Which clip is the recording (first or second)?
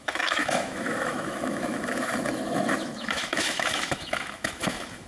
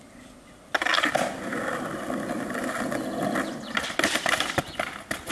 second